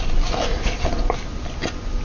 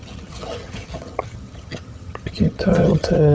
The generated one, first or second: second